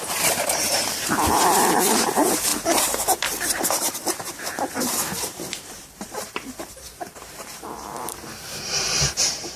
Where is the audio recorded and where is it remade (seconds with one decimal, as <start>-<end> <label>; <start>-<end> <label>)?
0.0-9.6 remade